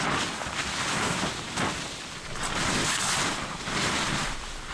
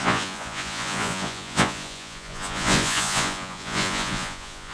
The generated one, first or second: second